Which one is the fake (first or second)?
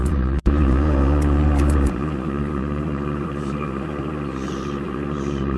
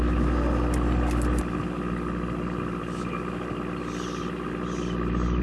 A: first